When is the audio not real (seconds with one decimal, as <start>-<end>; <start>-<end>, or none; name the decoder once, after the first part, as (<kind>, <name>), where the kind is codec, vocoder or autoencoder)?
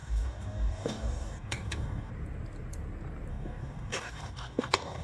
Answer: 0.0-2.1 (codec, DAC); 3.3-5.0